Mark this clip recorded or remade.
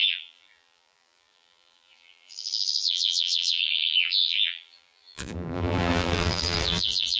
remade